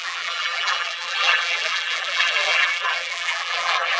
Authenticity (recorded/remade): remade